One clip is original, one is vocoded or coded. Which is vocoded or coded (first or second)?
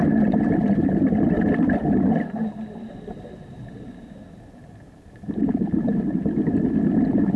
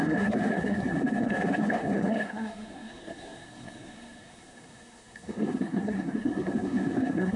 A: second